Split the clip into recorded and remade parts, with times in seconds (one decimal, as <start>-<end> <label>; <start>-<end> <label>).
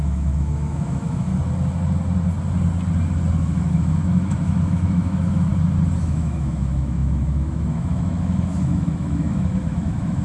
0.0-1.3 remade; 1.3-3.4 recorded; 3.4-5.5 remade; 5.5-6.0 recorded; 6.0-10.2 remade